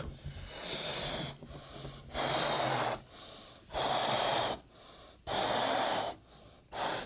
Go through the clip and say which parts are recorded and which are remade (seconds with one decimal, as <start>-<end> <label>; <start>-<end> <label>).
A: 0.0-7.1 recorded